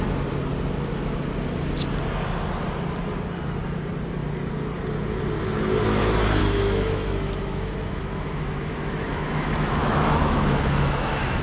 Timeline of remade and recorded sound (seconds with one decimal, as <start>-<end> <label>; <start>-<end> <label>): 0.0-6.4 recorded; 6.4-11.4 remade